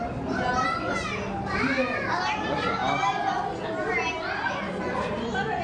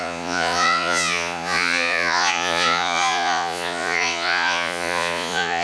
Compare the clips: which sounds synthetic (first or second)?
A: second